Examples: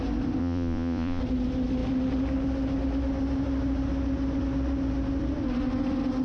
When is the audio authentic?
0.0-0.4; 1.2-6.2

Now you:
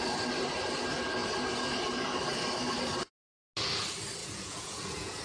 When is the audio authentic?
0.0-4.2

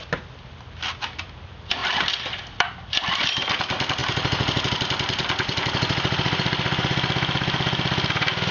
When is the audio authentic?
0.0-1.8; 3.6-5.2; 6.8-8.5

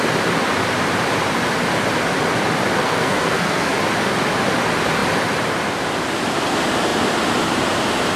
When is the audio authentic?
0.0-2.8; 3.7-8.2

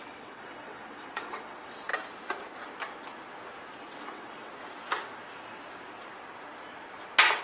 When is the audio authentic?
1.9-3.9; 4.5-7.4

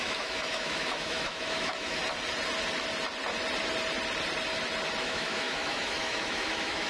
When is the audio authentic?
2.0-5.0

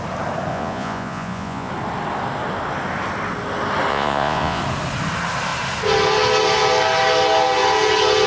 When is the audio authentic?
0.0-0.5; 1.7-3.9; 4.6-8.3